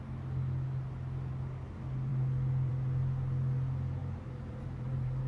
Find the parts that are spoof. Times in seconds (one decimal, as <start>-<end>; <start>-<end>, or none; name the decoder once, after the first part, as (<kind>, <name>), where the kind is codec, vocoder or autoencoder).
4.0-5.3 (vocoder, BigVGAN v2)